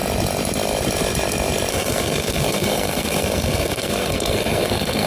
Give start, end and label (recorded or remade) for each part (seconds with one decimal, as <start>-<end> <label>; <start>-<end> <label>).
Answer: 0.0-1.7 recorded; 1.7-5.1 remade